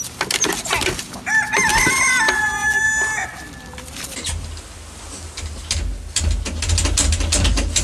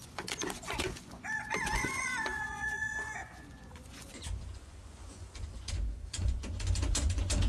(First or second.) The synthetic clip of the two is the second